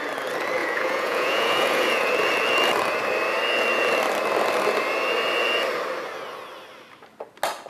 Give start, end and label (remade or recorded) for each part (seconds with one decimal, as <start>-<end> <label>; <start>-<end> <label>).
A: 0.0-0.6 recorded; 0.6-2.1 remade; 2.1-7.7 recorded